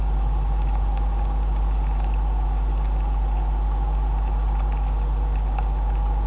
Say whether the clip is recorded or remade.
recorded